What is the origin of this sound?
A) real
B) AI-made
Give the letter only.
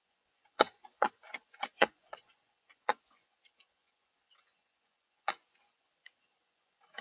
B